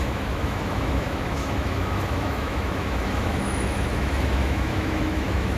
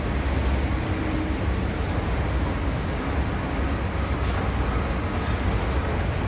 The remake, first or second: first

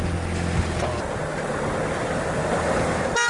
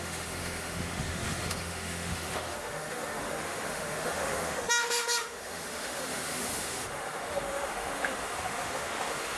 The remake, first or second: second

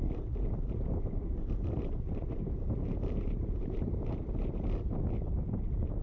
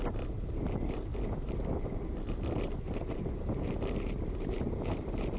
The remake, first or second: first